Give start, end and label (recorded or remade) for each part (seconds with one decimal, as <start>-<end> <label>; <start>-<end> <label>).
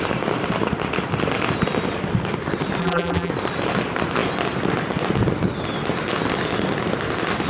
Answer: 0.0-2.8 recorded; 2.8-3.3 remade; 3.3-7.5 recorded